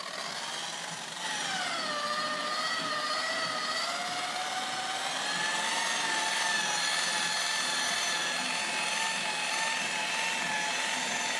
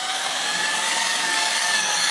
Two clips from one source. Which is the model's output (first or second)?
second